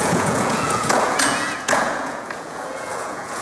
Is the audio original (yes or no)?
no